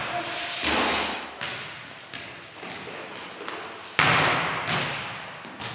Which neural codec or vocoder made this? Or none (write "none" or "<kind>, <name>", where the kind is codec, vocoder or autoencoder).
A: none